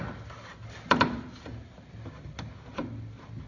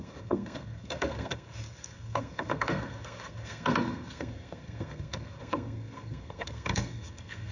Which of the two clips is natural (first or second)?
first